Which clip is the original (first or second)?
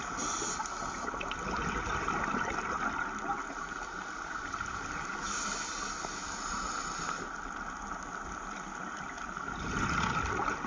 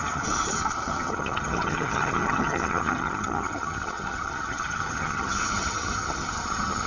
first